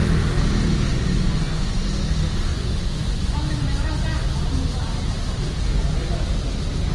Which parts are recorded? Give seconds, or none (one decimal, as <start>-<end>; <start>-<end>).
0.0-0.9; 1.8-2.5; 3.5-6.9